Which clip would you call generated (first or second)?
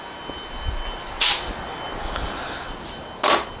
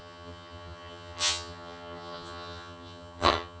second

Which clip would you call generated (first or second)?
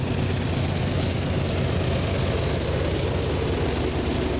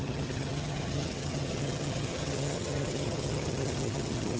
second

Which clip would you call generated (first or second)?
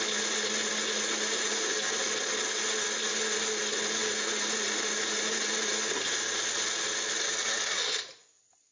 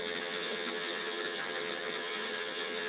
second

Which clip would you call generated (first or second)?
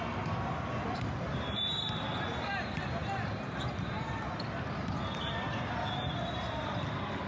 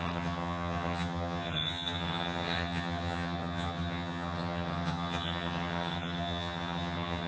second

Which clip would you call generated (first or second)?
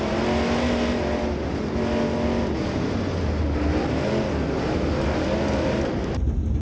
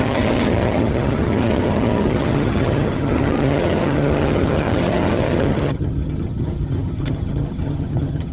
second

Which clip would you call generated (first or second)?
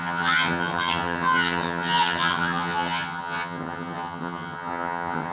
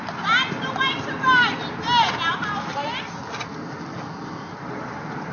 first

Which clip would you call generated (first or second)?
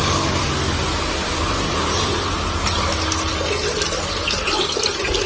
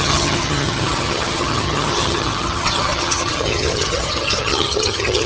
second